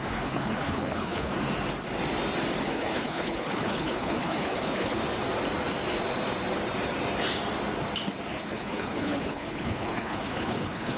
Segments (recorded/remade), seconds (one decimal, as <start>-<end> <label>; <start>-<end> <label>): 0.0-1.3 remade; 1.3-2.7 recorded; 2.7-5.0 remade; 5.0-8.3 recorded; 8.3-11.0 remade